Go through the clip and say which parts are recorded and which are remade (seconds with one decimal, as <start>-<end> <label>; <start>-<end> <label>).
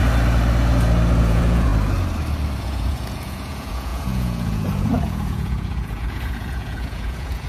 0.0-1.2 recorded; 1.2-1.7 remade; 1.7-2.6 recorded; 2.6-7.5 remade